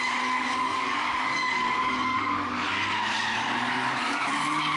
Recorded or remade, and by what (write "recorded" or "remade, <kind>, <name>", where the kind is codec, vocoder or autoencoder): remade, codec, DAC